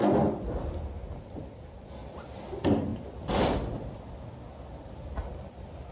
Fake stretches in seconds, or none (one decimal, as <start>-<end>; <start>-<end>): none